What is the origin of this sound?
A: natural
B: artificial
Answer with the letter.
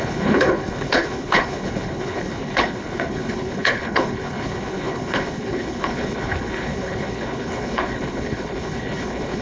B